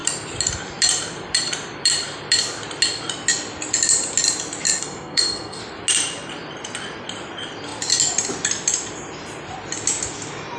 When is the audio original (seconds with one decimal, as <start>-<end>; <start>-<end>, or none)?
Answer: 0.0-4.8; 5.6-10.6